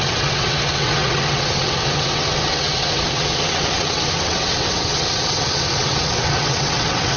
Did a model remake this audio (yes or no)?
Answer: yes